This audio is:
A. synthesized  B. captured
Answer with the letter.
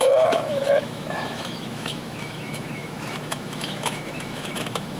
A